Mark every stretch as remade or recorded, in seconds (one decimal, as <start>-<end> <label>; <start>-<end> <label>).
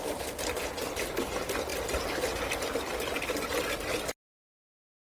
0.0-5.1 recorded